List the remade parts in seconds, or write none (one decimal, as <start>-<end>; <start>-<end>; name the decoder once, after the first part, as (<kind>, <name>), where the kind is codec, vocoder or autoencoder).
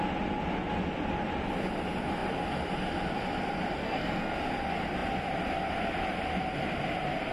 3.8-4.3 (codec, SNAC)